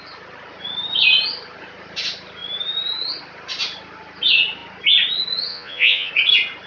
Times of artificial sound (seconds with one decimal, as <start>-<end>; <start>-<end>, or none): 5.5-6.1